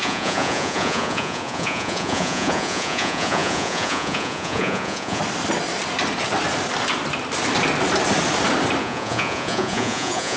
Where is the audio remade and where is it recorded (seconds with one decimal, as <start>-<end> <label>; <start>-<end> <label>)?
0.0-5.2 remade; 5.2-8.8 recorded; 8.8-10.4 remade